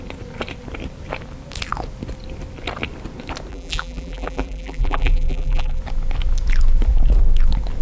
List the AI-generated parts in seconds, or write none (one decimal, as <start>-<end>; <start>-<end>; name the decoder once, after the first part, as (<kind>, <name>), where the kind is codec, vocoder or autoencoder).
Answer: 3.5-5.8 (vocoder, BigVGAN v2)